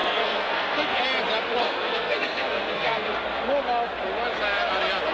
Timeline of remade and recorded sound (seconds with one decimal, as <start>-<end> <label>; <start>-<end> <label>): 0.0-1.0 remade; 1.0-1.6 recorded; 1.6-3.1 remade; 3.1-5.1 recorded